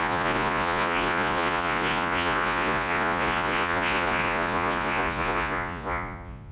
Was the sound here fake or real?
fake